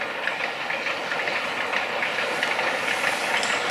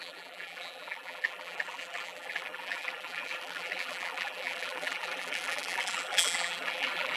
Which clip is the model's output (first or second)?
second